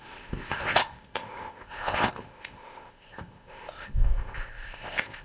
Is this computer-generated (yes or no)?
yes